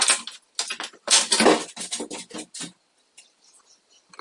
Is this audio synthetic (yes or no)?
no